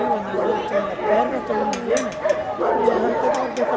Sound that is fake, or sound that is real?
real